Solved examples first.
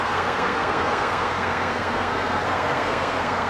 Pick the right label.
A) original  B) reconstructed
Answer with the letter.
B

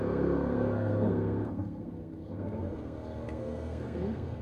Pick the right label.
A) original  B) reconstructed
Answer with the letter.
B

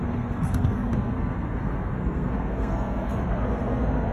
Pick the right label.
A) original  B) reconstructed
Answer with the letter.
B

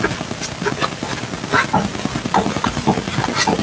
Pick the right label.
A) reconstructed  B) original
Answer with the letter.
B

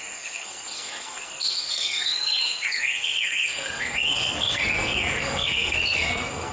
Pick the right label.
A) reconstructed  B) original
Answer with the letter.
A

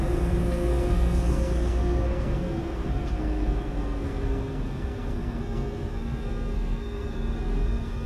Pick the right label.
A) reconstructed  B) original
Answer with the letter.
A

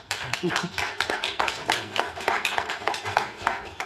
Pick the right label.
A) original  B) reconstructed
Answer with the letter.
B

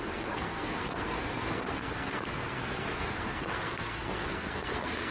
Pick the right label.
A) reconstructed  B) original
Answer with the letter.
A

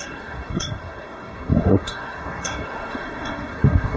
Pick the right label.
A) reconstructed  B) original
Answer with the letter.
A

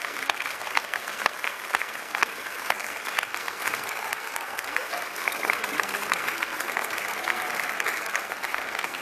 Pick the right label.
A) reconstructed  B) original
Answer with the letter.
A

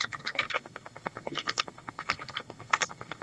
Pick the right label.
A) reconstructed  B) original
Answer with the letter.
A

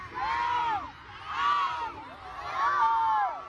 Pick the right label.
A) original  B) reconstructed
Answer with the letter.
A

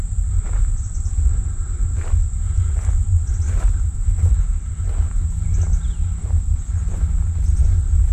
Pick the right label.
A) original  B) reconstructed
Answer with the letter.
A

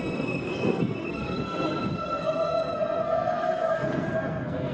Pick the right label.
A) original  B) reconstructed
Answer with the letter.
B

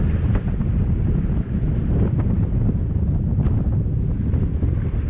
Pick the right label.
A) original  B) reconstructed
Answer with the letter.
A